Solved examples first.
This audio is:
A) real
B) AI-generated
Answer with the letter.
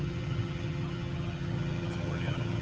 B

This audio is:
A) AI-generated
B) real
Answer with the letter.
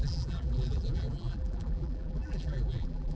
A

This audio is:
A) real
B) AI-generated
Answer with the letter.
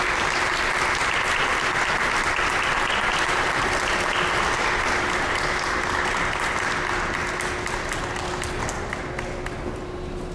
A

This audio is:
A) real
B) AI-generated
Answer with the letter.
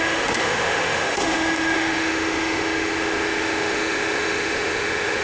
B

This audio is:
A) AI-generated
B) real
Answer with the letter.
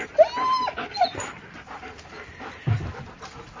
B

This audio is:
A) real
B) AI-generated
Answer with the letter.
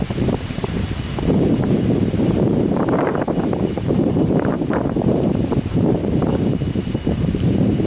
B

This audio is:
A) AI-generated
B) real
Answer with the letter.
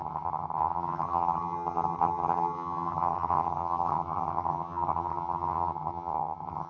A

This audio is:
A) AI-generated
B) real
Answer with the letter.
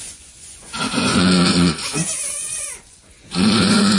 A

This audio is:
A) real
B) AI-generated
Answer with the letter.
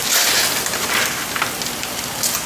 A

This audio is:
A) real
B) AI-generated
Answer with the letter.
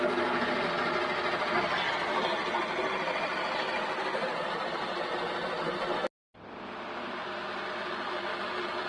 A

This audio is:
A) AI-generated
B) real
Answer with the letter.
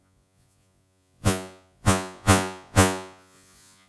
A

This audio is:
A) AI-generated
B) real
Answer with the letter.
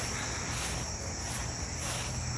B